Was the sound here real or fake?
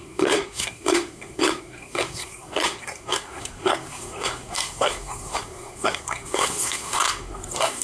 fake